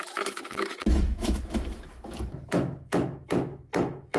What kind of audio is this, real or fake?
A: fake